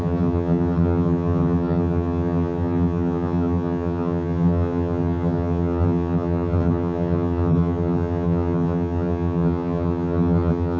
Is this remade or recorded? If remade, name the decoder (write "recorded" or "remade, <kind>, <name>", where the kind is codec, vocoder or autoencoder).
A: remade, vocoder, HiFi-GAN